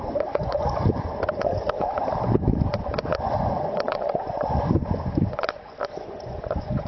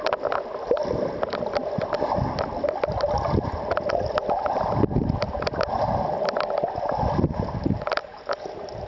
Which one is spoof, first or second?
first